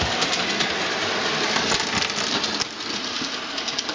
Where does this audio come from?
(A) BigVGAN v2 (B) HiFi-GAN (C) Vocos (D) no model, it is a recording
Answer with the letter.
D